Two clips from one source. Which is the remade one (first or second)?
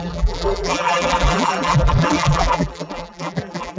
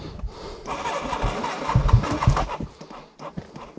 first